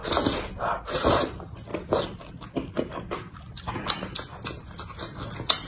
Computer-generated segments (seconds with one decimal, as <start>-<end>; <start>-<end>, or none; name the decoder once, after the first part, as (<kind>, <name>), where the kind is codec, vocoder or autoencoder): none